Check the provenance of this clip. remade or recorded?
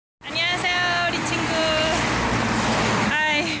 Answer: recorded